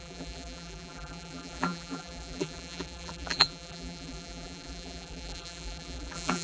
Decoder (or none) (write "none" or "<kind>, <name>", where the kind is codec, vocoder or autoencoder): vocoder, BigVGAN v2